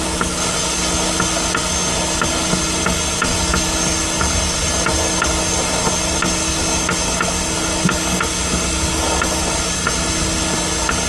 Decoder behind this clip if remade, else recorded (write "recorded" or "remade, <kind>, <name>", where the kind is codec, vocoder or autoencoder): recorded